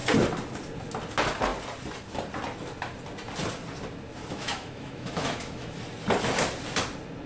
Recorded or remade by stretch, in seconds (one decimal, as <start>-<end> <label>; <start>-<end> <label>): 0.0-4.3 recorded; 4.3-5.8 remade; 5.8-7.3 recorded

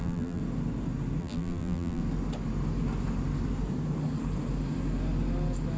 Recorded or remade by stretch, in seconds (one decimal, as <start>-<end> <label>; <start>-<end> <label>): 0.0-0.4 remade; 0.4-1.2 recorded; 1.2-2.0 remade; 2.0-5.8 recorded

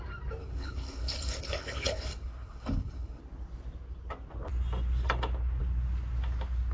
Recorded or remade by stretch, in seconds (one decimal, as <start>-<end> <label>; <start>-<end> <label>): 0.0-0.4 recorded; 0.4-3.2 remade; 3.2-6.7 recorded

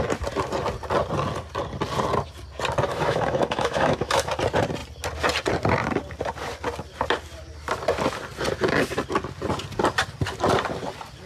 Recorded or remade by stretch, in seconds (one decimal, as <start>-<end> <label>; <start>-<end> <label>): 0.0-2.9 recorded; 2.9-4.3 remade; 4.3-11.3 recorded